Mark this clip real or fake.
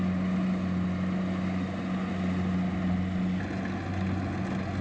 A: real